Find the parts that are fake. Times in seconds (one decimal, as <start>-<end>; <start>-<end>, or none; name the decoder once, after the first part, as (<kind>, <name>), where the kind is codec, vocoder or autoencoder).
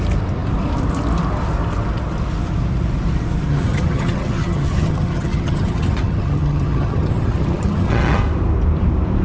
3.5-8.2 (vocoder, HiFi-GAN)